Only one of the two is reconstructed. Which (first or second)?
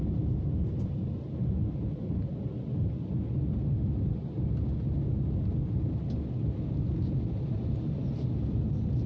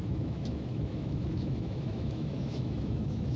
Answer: second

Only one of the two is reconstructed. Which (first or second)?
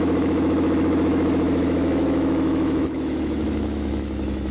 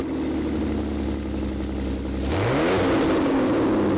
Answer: first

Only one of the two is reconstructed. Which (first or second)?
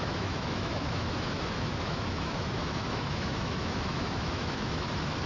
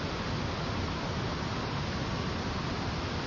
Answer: first